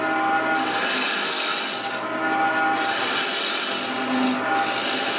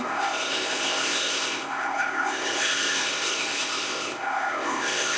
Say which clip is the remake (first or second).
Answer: second